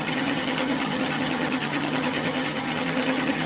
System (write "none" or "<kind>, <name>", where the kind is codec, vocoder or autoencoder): vocoder, HiFi-GAN